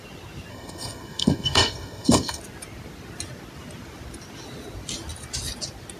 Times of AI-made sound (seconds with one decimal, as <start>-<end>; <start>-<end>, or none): 0.5-2.4